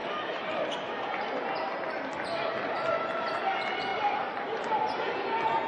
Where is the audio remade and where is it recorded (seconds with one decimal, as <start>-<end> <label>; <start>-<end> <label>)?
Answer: 0.0-3.9 recorded; 3.9-4.7 remade; 4.7-5.7 recorded